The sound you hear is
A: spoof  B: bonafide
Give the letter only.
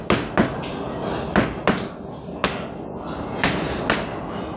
B